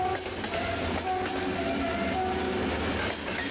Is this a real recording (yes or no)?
yes